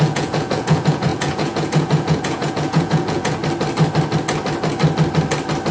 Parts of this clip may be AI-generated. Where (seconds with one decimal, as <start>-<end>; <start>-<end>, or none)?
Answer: 0.0-3.4